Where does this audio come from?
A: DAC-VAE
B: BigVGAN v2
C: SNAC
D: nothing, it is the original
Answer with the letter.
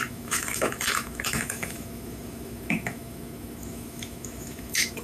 A